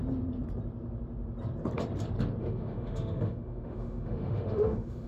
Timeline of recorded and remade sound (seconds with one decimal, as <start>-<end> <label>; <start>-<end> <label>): 0.0-2.4 recorded; 2.4-5.1 remade